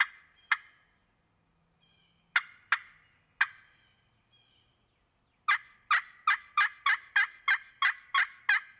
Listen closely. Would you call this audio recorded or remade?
recorded